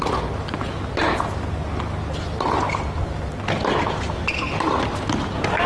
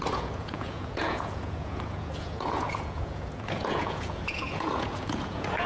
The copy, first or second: second